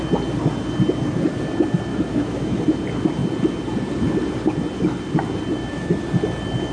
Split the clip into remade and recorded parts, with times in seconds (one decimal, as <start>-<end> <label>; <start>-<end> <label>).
0.0-1.9 recorded; 1.9-2.6 remade; 2.6-5.5 recorded; 5.5-6.0 remade; 6.0-6.7 recorded